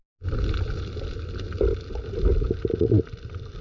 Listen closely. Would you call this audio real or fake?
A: real